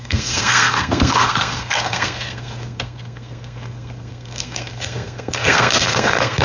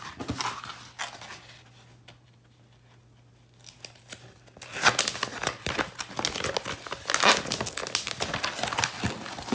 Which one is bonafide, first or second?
second